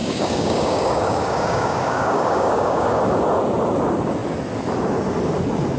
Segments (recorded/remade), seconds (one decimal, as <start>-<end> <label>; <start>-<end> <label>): 0.0-3.0 remade; 3.0-5.8 recorded